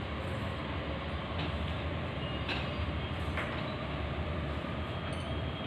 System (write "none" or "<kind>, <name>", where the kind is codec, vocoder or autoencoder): none